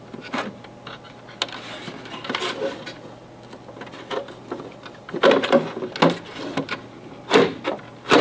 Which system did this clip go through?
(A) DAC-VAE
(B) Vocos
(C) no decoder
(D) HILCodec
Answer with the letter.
C